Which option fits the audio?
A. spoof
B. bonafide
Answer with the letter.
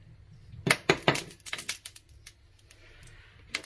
B